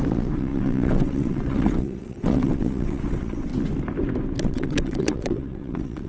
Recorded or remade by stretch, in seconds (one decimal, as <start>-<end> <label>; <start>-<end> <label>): 0.0-3.5 remade; 3.5-4.4 recorded; 4.4-6.1 remade